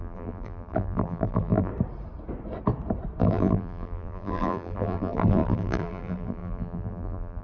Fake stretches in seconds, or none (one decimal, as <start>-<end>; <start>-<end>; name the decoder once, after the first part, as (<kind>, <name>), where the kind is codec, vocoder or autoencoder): 0.0-1.7 (vocoder, BigVGAN v2); 3.2-7.4